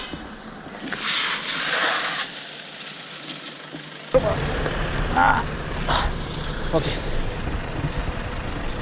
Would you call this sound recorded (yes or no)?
yes